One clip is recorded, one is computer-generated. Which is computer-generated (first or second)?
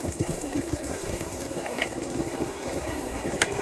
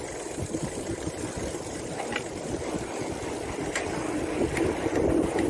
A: first